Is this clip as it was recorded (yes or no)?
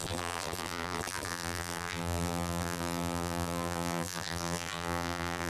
no